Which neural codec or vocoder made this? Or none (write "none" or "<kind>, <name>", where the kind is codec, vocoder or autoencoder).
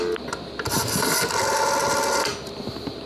none